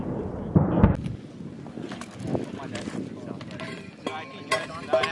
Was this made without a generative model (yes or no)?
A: yes